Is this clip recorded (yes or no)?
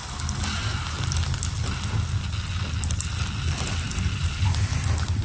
yes